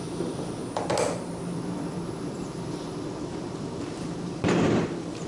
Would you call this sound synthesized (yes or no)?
yes